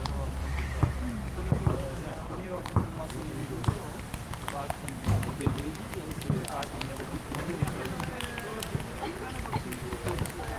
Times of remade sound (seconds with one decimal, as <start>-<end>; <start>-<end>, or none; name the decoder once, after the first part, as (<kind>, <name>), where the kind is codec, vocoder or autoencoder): 0.4-3.0 (vocoder, BigVGAN v2); 3.4-7.5